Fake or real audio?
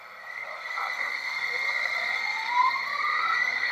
fake